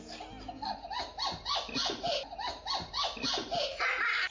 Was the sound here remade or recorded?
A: recorded